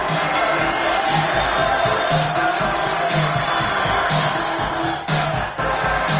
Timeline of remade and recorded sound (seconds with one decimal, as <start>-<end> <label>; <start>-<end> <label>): 0.0-6.2 recorded